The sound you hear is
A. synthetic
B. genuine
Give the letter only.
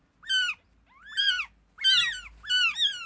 B